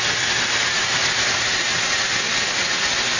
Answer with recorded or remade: recorded